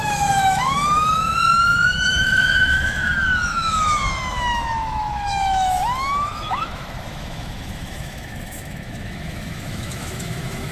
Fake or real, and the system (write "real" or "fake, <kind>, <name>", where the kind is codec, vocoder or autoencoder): fake, autoencoder, DAC-VAE